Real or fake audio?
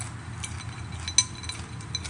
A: real